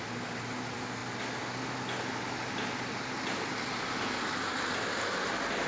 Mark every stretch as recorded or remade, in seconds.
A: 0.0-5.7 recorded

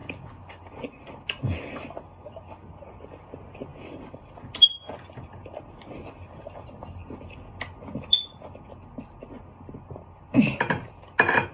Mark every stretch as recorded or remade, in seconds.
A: 0.0-0.7 remade; 0.7-11.5 recorded

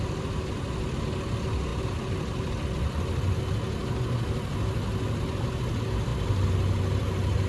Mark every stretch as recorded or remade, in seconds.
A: 0.0-7.5 recorded

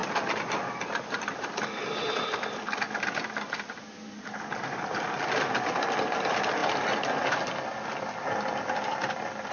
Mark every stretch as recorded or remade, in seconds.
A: 0.0-9.5 recorded